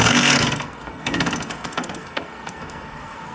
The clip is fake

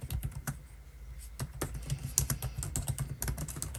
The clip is real